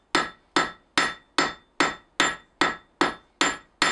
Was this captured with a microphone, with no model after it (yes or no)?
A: yes